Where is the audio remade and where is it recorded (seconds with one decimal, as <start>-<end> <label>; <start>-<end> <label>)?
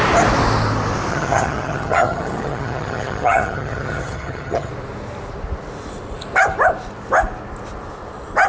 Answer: 0.0-1.1 recorded; 1.1-4.7 remade; 4.7-8.5 recorded